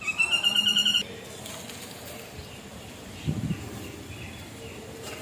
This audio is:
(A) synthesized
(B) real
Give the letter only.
B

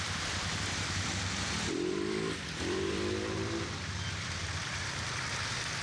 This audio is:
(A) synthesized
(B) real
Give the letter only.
A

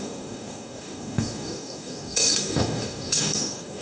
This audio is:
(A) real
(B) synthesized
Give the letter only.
B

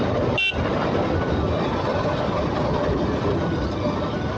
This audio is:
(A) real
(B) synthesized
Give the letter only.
A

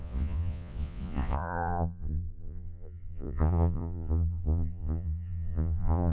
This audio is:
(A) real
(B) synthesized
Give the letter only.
B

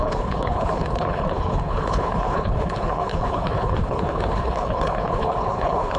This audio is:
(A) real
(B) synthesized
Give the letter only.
B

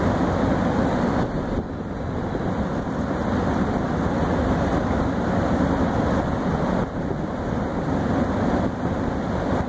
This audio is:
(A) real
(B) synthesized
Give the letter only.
A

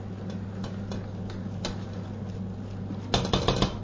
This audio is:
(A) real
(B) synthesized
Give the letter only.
A